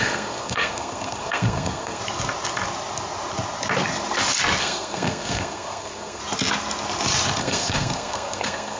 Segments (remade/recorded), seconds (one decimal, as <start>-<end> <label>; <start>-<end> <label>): 0.0-2.0 remade; 2.0-4.6 recorded; 4.6-6.2 remade; 6.2-7.4 recorded; 7.4-8.8 remade